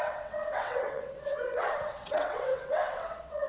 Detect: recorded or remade remade